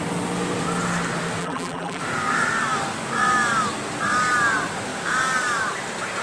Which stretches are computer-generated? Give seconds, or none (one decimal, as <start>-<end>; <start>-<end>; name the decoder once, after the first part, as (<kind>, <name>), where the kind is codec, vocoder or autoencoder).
1.4-2.0 (vocoder, BigVGAN v2)